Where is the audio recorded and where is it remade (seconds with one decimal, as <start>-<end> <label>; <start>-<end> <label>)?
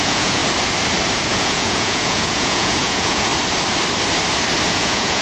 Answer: 0.0-0.4 remade; 0.4-1.3 recorded; 1.3-3.3 remade; 3.3-4.7 recorded; 4.7-5.2 remade